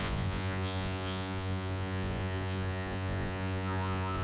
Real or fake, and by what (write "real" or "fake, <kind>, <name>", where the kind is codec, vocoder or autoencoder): fake, vocoder, Vocos